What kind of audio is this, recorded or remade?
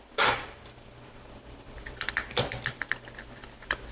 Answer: remade